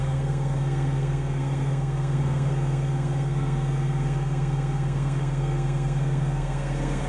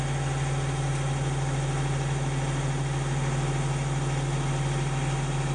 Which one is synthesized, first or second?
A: first